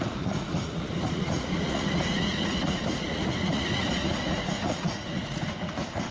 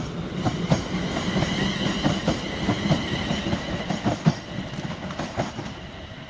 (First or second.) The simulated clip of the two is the first